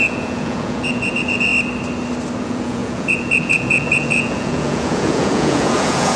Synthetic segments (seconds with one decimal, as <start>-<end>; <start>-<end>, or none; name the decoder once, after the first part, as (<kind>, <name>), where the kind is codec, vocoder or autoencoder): 0.0-1.5 (vocoder, Vocos); 2.4-6.2